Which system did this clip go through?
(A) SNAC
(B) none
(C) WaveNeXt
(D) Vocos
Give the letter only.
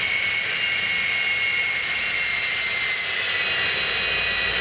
B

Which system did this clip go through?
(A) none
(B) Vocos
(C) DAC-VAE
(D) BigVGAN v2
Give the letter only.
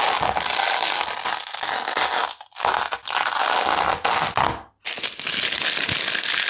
A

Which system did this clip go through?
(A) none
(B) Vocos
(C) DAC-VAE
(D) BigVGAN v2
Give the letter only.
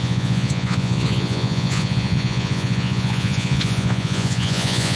B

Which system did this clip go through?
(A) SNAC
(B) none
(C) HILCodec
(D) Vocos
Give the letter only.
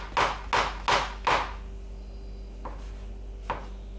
B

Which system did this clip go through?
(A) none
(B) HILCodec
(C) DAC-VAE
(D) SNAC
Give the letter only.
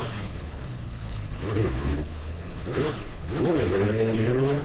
B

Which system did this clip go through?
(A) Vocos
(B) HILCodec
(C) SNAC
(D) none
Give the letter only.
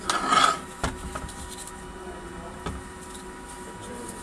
D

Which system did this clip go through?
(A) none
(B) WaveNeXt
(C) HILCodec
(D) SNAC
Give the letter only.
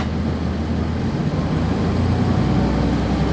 A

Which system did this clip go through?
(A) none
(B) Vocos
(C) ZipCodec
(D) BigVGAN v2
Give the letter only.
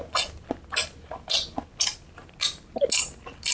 A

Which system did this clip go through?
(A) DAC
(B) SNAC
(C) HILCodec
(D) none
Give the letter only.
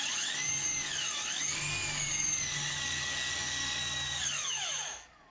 A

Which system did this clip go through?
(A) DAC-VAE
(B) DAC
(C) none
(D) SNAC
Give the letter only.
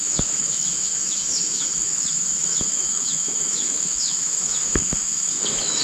A